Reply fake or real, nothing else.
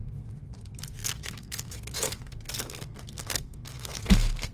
fake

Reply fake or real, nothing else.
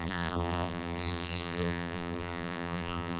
fake